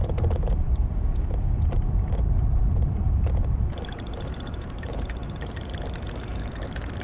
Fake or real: fake